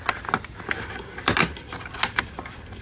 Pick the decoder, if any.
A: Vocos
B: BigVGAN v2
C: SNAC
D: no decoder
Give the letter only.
B